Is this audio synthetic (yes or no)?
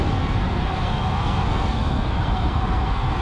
yes